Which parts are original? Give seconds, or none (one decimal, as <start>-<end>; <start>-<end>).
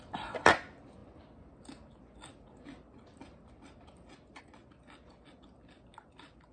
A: 0.0-6.5